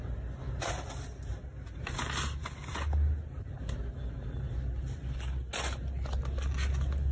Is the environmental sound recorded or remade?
recorded